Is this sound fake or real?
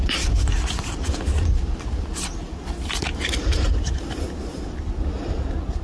real